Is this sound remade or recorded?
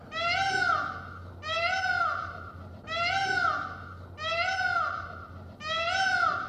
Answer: recorded